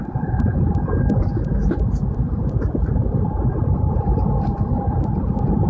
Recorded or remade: recorded